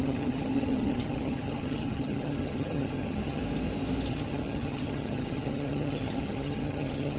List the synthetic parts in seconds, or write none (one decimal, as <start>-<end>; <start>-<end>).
0.0-3.4; 4.1-7.2

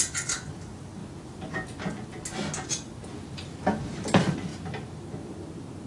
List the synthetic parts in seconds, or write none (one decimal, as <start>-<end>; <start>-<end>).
0.0-1.0; 3.3-4.5